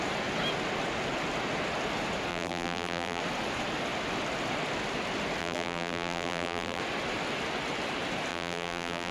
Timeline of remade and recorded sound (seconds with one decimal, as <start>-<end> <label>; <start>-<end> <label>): 0.0-2.3 recorded; 2.3-3.2 remade; 3.2-5.4 recorded; 5.4-6.8 remade; 6.8-8.3 recorded; 8.3-9.1 remade